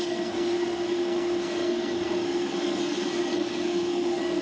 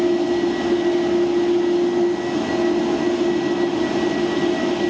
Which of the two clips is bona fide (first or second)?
second